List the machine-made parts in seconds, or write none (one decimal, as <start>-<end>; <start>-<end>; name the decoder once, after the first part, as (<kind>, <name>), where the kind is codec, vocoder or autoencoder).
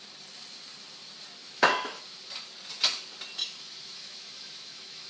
1.4-2.0 (autoencoder, DAC-VAE); 3.4-5.1